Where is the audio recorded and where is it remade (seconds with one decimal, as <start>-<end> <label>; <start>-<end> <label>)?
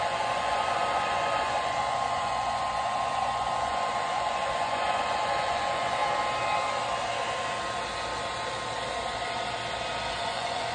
0.0-6.0 remade; 6.0-10.1 recorded; 10.1-10.7 remade